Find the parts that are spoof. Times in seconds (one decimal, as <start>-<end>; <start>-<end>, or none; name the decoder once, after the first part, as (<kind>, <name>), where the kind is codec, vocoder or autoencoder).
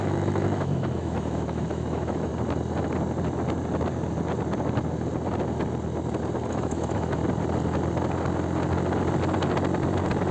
0.0-2.3 (autoencoder, DAC-VAE); 6.5-7.2